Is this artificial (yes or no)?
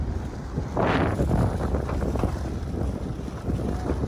no